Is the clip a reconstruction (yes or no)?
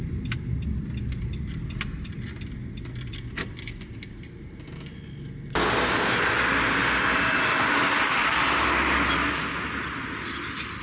no